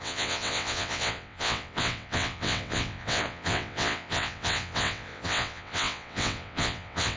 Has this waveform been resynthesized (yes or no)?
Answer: yes